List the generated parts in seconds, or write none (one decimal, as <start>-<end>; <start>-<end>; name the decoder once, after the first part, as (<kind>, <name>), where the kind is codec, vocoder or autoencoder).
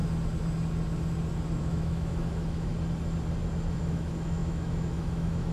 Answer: 1.6-2.7 (autoencoder, DAC-VAE); 3.8-5.5